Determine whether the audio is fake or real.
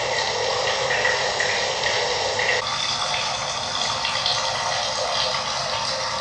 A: real